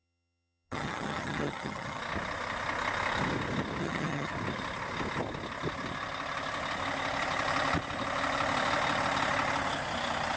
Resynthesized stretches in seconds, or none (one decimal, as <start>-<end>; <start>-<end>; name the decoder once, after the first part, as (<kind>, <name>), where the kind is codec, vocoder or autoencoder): 0.0-2.0 (vocoder, HiFi-GAN); 3.8-4.3